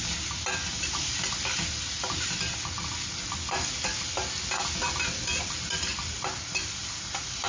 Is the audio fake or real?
real